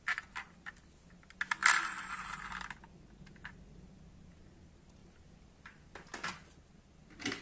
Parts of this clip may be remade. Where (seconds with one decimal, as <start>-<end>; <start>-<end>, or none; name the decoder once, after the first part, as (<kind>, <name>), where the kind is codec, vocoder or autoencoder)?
none